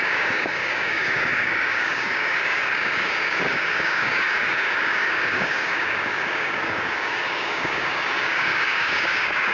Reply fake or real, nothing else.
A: fake